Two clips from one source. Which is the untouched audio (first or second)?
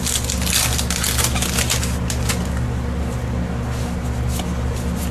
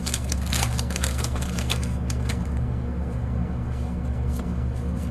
first